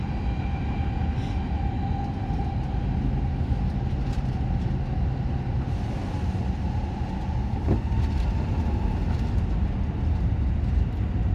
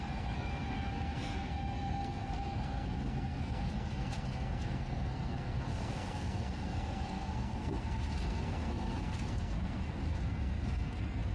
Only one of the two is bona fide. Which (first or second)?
first